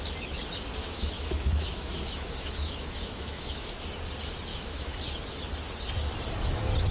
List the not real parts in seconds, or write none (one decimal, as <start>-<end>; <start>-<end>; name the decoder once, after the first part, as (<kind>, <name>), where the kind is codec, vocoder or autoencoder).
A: 0.8-3.8 (autoencoder, DAC-VAE); 4.5-5.0